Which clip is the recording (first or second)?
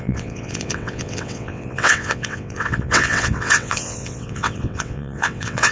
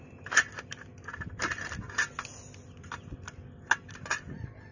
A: second